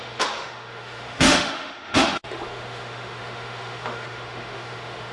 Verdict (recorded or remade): remade